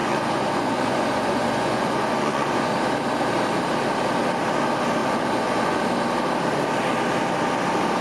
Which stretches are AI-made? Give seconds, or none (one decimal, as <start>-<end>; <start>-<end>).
0.0-2.7; 5.0-5.8